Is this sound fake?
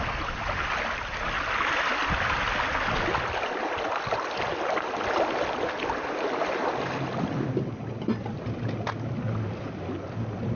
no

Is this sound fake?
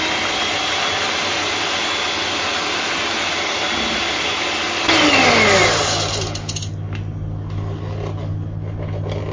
no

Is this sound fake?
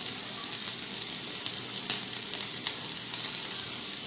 no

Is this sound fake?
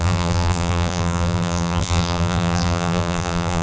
yes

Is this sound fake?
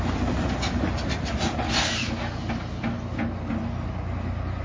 no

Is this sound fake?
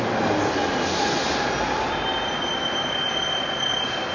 no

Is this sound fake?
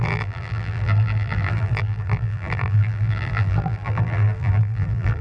yes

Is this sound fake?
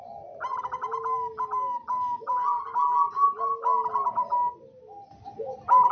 no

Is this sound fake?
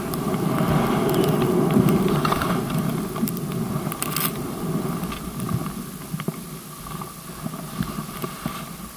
no